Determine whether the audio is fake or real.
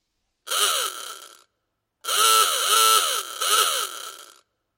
real